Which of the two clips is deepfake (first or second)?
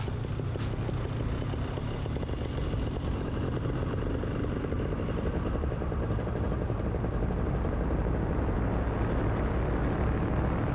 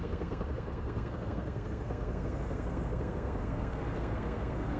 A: second